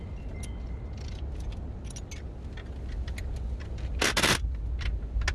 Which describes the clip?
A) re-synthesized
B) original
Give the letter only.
B